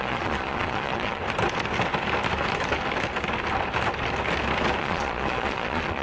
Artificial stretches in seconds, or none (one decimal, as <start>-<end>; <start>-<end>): 0.0-1.2; 4.8-6.0